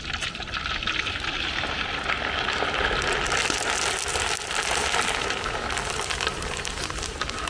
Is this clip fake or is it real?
real